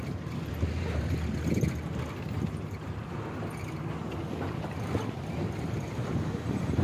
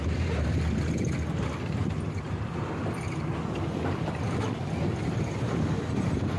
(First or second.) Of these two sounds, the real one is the first